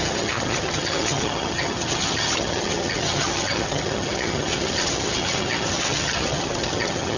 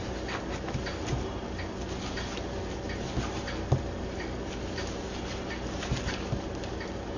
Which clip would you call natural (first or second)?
second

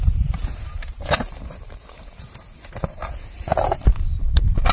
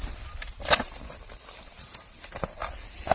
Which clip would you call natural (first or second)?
second